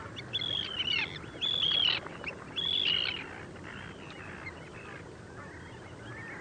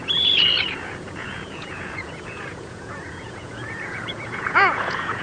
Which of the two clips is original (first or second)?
first